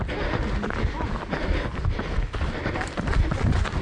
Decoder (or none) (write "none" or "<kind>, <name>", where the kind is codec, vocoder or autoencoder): none